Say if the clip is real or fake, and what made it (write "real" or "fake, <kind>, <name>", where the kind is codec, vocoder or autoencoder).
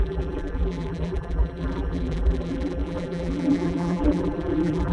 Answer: fake, vocoder, BigVGAN v2